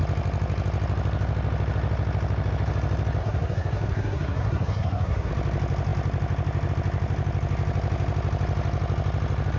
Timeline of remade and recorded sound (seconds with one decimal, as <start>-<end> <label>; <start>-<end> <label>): 0.0-3.2 recorded; 3.2-5.3 remade; 5.3-9.6 recorded